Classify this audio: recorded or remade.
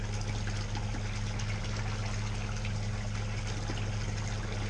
recorded